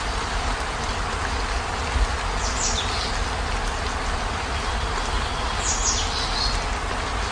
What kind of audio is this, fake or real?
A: real